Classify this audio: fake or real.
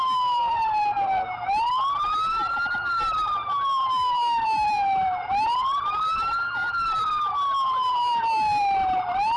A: fake